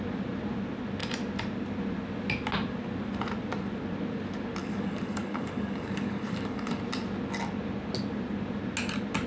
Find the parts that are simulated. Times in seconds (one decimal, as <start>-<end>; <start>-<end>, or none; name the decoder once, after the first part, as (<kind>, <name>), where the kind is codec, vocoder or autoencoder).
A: 4.6-6.8 (codec, DAC)